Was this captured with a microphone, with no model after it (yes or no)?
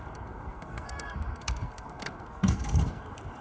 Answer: no